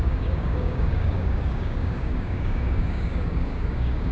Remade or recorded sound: remade